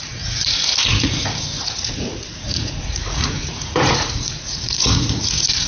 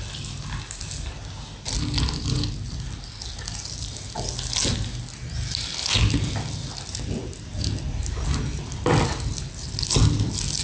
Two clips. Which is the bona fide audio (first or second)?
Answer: second